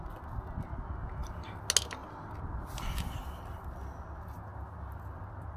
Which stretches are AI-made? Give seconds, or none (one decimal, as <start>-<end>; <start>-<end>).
2.0-4.0; 4.5-5.6